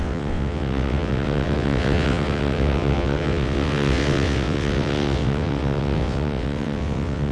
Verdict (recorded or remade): remade